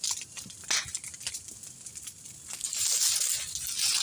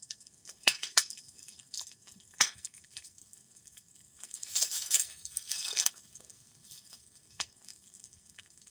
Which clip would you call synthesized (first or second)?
second